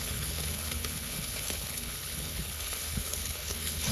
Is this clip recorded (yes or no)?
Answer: no